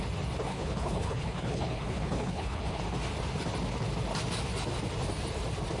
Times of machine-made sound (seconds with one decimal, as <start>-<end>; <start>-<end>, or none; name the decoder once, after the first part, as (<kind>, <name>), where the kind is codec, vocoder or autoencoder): 0.5-2.8 (codec, HILCodec)

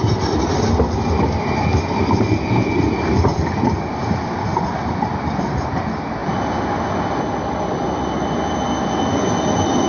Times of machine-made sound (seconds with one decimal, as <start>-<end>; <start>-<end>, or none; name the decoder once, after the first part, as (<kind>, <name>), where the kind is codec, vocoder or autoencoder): none

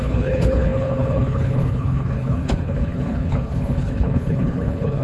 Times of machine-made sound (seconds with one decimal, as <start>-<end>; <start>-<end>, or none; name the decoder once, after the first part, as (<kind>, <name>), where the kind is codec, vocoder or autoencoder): 0.0-5.0 (codec, HILCodec)

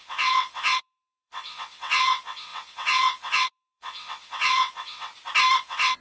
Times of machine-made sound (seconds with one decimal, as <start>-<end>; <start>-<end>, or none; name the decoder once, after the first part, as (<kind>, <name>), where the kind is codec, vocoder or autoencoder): 0.0-5.1 (vocoder, WaveNeXt); 5.6-6.0

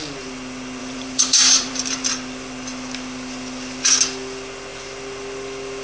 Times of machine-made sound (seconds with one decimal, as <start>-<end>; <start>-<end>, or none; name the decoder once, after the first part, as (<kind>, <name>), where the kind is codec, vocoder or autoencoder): 0.8-2.1 (vocoder, BigVGAN v2)

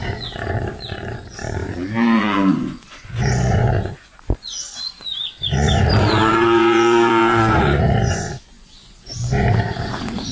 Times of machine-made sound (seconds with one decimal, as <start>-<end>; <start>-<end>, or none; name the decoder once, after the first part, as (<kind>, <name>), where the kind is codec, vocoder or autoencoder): 0.0-10.3 (vocoder, Vocos)